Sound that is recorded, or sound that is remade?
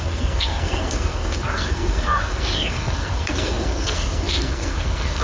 remade